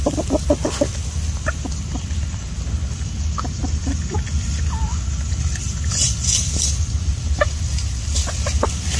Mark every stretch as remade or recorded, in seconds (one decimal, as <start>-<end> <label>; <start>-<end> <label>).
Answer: 0.0-9.0 recorded